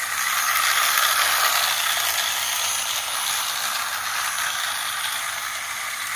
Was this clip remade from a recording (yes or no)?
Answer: no